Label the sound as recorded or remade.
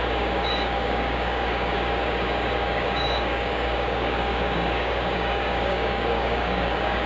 remade